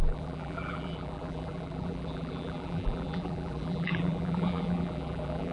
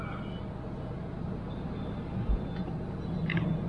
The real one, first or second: second